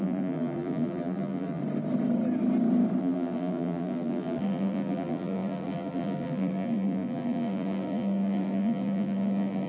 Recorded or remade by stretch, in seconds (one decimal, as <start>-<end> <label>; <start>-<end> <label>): 0.0-1.6 remade; 1.6-3.0 recorded; 3.0-9.7 remade